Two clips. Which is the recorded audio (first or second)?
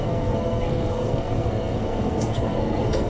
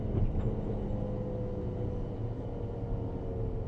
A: second